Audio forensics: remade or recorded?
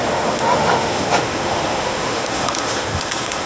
remade